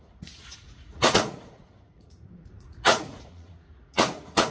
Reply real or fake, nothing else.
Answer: fake